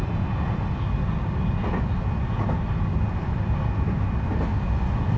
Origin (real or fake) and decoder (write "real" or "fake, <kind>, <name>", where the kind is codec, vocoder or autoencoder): real